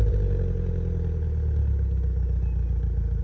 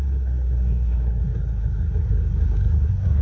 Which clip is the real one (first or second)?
first